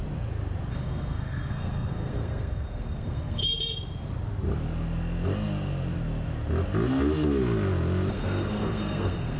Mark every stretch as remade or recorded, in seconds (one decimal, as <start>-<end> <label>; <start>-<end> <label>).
0.0-0.7 recorded; 0.7-3.4 remade; 3.4-8.1 recorded; 8.1-9.4 remade